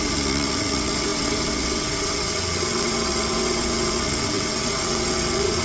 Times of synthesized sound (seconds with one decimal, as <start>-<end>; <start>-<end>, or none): 0.0-5.6